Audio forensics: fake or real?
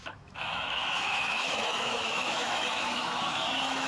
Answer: fake